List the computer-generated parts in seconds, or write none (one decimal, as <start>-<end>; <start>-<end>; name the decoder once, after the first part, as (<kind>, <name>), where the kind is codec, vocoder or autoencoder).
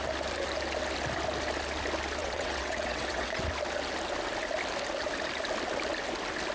2.2-3.4 (vocoder, WaveNeXt)